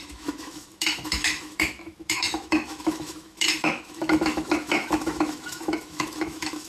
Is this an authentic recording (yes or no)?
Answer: no